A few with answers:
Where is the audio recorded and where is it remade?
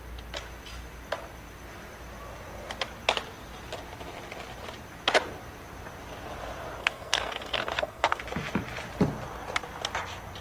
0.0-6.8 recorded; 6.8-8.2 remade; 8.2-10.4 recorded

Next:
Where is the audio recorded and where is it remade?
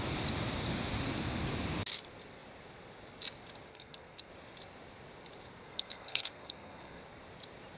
0.0-3.7 recorded; 3.7-4.3 remade; 4.3-5.6 recorded; 5.6-7.0 remade; 7.0-7.8 recorded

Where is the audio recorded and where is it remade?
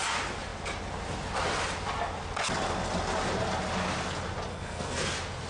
0.0-4.5 recorded; 4.5-5.1 remade; 5.1-5.5 recorded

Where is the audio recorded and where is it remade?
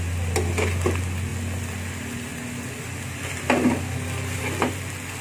0.0-5.2 recorded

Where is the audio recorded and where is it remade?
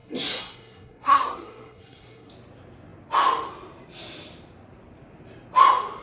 0.0-2.3 remade; 2.3-6.0 recorded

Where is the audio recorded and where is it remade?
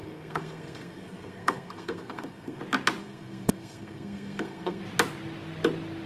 0.0-2.6 remade; 2.6-3.0 recorded; 3.0-4.8 remade; 4.8-6.1 recorded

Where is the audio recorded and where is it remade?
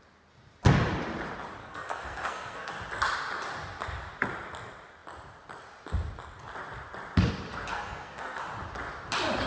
0.0-1.6 recorded; 1.6-2.7 remade; 2.7-7.7 recorded; 7.7-8.4 remade; 8.4-9.5 recorded